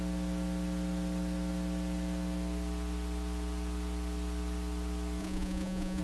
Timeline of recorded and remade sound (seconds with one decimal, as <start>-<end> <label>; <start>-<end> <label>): 0.0-5.2 recorded; 5.2-6.0 remade